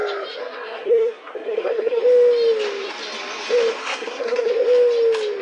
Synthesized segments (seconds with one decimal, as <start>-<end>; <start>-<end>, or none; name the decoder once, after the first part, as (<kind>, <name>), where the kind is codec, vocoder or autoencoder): 0.4-2.0 (codec, SNAC); 3.8-4.5